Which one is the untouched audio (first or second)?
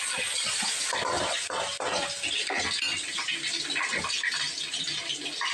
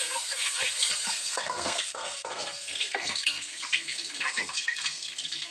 first